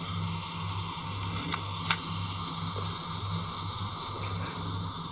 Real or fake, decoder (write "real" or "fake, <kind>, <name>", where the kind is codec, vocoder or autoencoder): real